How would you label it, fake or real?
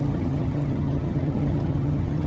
fake